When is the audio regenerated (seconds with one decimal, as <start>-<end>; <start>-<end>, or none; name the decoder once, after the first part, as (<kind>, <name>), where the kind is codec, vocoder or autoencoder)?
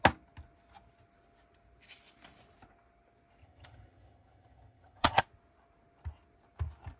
3.4-5.2 (vocoder, HiFi-GAN)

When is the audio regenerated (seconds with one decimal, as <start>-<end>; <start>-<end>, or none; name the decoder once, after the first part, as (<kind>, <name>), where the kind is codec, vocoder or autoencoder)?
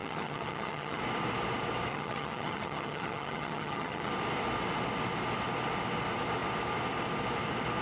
0.0-1.0 (vocoder, HiFi-GAN); 1.9-4.1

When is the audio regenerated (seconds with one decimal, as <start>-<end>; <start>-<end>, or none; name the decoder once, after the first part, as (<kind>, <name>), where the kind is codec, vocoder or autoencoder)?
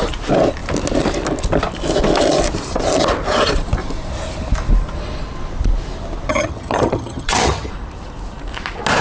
6.3-7.7 (vocoder, HiFi-GAN)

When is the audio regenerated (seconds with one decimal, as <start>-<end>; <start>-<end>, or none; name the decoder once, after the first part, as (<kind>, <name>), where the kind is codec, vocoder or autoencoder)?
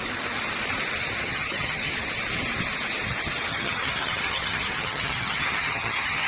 1.2-1.9 (vocoder, HiFi-GAN); 3.5-6.3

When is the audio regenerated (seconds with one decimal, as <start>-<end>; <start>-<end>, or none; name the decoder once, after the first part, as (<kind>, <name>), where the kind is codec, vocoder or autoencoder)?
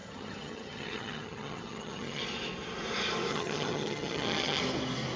0.0-2.2 (vocoder, HiFi-GAN); 3.3-4.6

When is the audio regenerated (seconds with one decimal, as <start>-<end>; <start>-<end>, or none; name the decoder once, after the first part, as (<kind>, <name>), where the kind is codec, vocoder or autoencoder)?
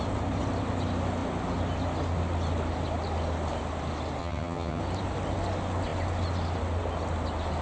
4.2-4.8 (vocoder, HiFi-GAN)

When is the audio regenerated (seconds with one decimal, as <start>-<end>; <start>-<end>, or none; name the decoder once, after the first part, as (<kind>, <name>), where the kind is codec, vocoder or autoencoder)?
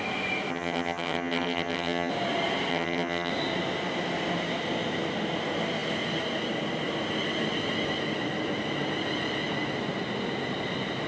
0.5-2.1 (vocoder, HiFi-GAN); 2.7-3.3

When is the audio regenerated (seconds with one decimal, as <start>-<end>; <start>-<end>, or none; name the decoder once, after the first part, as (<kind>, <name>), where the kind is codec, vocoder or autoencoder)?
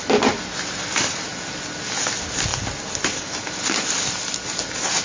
none